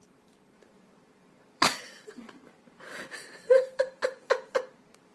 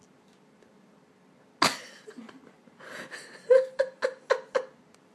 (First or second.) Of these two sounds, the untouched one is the second